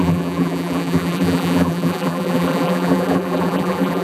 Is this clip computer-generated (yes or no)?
yes